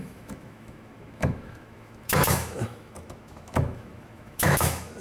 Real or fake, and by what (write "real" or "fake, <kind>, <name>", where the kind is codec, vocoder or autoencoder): fake, autoencoder, DAC-VAE